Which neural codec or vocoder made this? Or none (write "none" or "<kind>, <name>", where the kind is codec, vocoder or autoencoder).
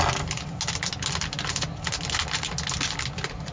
none